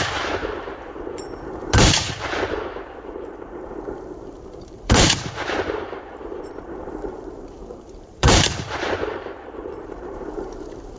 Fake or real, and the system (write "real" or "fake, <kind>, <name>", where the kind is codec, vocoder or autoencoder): fake, vocoder, BigVGAN v2